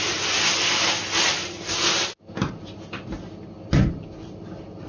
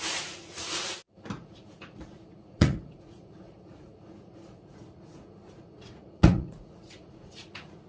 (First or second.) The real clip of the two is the first